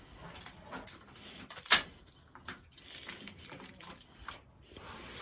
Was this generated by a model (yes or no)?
yes